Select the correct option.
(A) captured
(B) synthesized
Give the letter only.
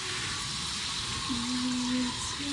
A